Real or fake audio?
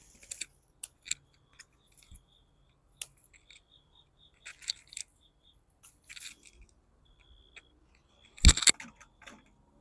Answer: real